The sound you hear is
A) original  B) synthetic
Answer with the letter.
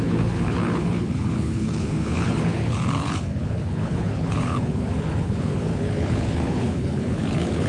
B